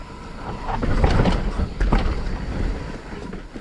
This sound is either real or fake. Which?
real